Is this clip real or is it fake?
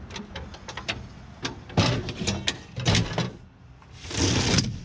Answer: real